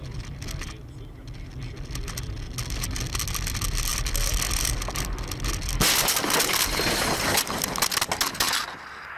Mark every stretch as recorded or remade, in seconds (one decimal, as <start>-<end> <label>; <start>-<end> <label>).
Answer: 0.0-9.2 recorded